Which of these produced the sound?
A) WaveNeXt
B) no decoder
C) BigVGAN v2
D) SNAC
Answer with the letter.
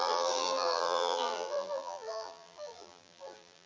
C